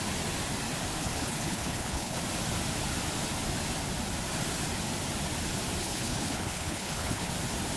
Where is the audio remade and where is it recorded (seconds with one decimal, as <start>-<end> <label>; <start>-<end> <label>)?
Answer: 0.0-1.0 recorded; 1.0-2.2 remade; 2.2-5.8 recorded; 5.8-7.3 remade; 7.3-7.8 recorded